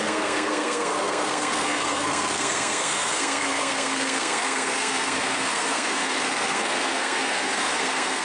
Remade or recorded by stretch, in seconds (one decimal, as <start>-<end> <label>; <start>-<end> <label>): 0.0-8.2 remade